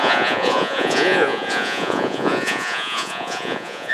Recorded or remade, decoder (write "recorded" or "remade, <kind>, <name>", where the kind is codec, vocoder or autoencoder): remade, vocoder, Vocos